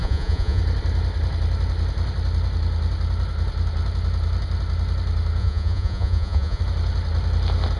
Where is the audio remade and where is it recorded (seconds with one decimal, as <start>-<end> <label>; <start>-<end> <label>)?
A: 0.0-0.6 remade; 0.6-5.4 recorded; 5.4-6.6 remade; 6.6-7.8 recorded